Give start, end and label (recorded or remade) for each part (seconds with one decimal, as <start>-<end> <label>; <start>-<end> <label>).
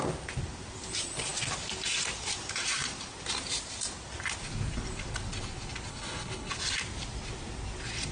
0.0-5.9 recorded; 5.9-6.5 remade; 6.5-8.1 recorded